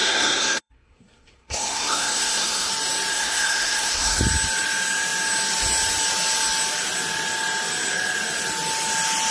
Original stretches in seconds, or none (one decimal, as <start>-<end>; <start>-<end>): 2.7-3.1; 4.2-9.3